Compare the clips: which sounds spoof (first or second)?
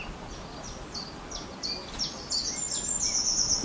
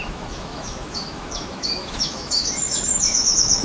second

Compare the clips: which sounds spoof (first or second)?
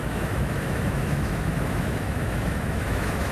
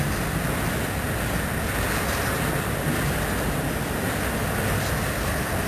first